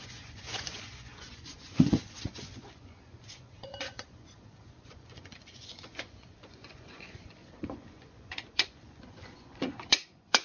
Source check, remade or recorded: remade